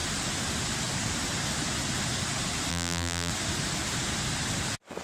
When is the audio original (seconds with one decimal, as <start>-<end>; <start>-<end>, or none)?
0.0-2.7; 3.3-5.0

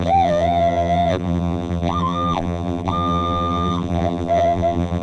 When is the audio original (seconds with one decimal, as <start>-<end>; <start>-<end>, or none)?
none

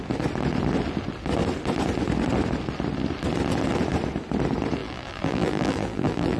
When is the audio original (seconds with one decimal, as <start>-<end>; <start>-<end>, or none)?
0.0-4.8

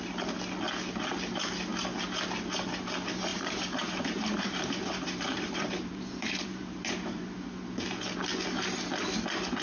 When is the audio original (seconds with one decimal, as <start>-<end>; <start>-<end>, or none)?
0.0-3.3; 7.2-9.6

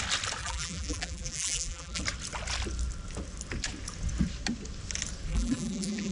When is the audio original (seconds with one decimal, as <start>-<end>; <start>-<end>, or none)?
0.0-0.4; 2.0-5.3

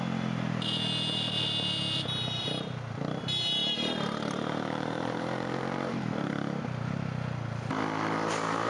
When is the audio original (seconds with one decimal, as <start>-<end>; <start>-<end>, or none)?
0.0-3.6; 6.3-8.7

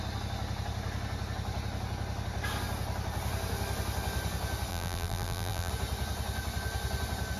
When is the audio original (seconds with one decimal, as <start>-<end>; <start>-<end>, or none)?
0.0-4.7; 5.7-7.4